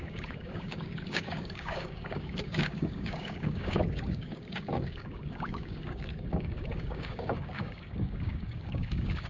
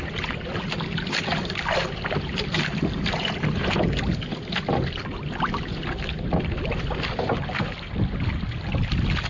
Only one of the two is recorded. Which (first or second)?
second